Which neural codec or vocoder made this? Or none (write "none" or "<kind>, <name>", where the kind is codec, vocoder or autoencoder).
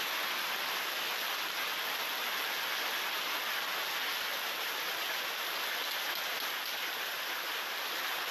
none